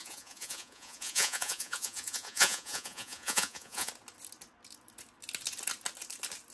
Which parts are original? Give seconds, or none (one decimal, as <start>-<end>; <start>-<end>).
3.9-6.5